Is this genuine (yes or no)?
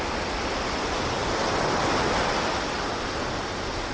yes